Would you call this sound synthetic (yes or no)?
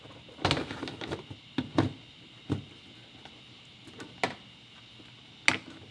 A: no